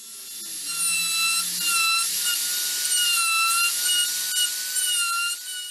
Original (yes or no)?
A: yes